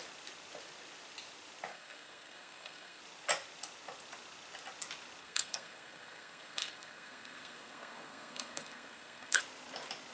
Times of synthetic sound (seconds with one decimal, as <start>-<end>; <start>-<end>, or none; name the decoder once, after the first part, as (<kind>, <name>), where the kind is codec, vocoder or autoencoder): 1.7-3.0 (codec, SNAC); 5.2-9.4